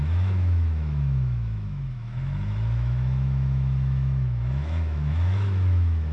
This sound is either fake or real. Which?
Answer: fake